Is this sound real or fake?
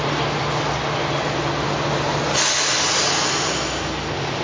real